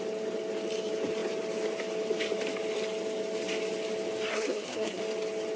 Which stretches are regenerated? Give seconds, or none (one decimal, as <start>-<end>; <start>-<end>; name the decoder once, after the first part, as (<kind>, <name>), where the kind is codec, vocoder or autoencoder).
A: 4.3-5.0 (codec, SNAC)